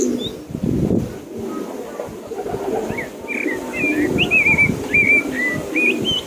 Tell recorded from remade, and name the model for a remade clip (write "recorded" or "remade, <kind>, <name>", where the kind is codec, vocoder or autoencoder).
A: recorded